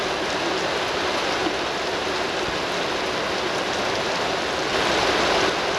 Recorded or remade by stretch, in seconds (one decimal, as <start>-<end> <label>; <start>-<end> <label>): 0.0-5.8 recorded